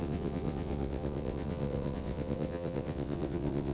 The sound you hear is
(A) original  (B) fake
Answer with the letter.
B